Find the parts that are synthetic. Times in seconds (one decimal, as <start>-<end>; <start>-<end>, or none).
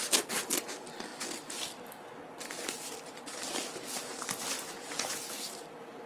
none